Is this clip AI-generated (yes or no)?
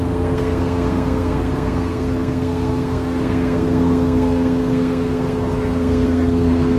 yes